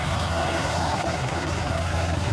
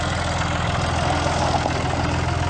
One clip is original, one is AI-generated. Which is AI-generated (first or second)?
first